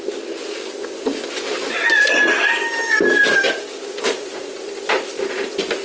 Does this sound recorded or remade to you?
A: recorded